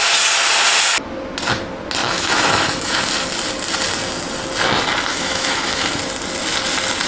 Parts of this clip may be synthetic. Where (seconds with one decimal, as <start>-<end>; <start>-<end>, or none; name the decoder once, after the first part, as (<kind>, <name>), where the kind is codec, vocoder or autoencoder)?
2.0-3.0 (autoencoder, DAC-VAE); 5.1-5.9